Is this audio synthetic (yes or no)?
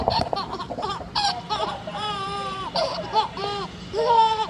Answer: yes